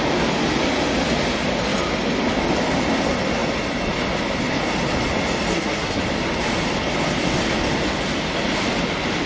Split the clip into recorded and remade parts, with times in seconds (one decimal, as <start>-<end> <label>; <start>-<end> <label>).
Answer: 0.0-5.5 recorded; 5.5-6.0 remade; 6.0-9.3 recorded